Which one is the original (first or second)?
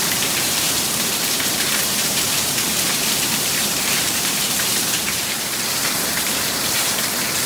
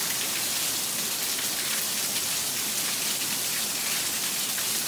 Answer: second